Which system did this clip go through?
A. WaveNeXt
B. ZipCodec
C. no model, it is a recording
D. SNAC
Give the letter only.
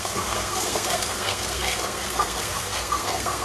D